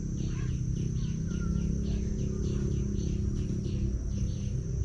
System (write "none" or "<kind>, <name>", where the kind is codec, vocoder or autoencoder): none